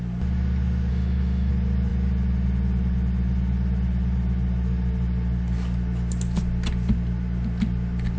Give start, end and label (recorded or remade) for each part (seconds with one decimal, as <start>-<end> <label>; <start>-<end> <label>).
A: 0.0-0.9 recorded; 0.9-1.5 remade; 1.5-8.2 recorded